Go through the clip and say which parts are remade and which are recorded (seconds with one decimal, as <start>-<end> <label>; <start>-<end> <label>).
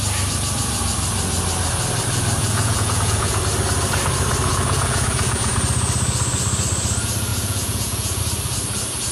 0.0-2.4 recorded; 2.4-3.4 remade; 3.4-4.5 recorded; 4.5-5.5 remade; 5.5-7.3 recorded; 7.3-8.2 remade; 8.2-9.1 recorded